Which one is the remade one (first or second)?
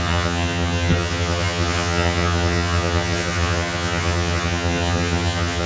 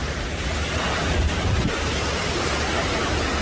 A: first